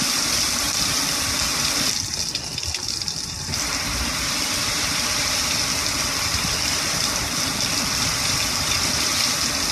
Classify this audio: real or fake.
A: real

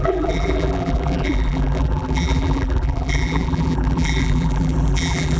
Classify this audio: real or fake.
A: fake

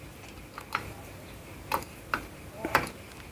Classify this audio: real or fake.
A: real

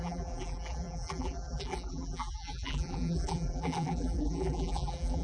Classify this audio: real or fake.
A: fake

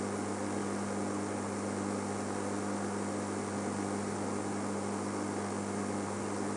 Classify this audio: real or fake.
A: real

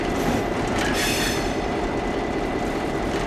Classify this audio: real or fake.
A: fake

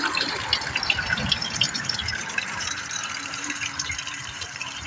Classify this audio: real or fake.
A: fake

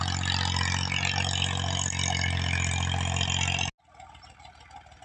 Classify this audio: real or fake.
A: real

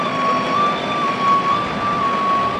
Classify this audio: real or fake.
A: real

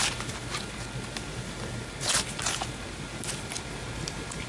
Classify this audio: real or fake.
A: real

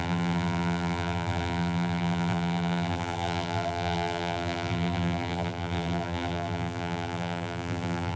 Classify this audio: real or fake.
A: fake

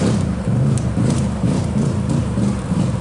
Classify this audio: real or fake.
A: fake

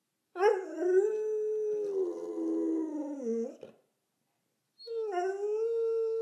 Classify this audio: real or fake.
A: real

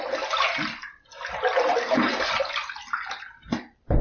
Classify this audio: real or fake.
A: real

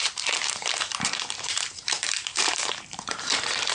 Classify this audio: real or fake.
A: fake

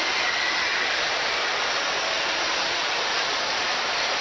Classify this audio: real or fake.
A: real